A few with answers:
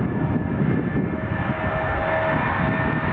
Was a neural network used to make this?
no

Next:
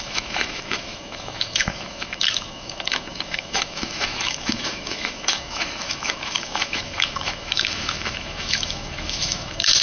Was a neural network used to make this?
yes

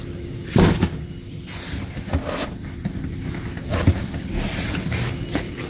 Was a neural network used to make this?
no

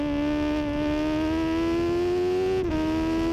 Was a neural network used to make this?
no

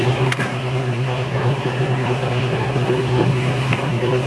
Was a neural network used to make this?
yes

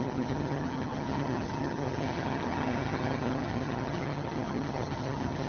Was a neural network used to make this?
yes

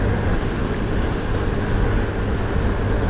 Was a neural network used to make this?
no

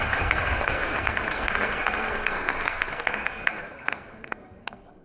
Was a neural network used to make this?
yes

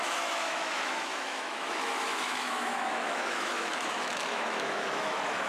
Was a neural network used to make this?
yes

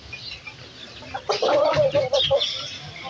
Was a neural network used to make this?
no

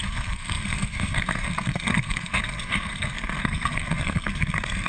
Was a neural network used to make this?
yes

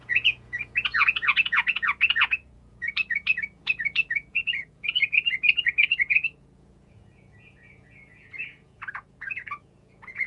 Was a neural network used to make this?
yes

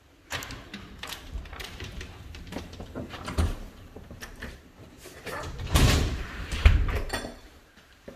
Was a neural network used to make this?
yes